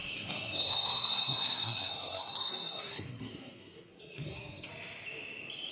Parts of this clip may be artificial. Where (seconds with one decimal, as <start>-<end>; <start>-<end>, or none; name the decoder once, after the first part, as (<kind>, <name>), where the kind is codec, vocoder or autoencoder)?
0.0-4.7 (codec, SNAC)